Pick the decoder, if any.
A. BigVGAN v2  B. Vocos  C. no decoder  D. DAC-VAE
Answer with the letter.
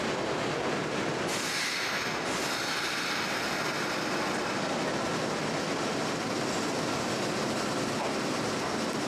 C